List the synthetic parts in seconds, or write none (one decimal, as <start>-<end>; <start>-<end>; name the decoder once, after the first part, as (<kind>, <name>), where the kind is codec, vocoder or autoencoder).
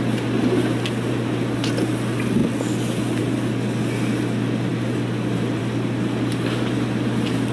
none